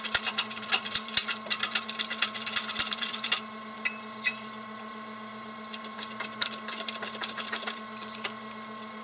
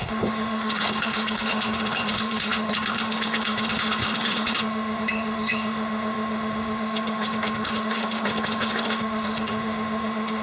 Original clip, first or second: first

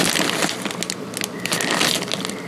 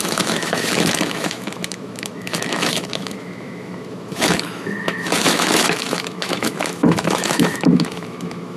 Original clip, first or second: first